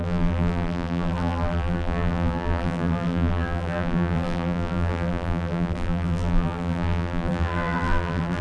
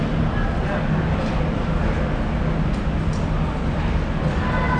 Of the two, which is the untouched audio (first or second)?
second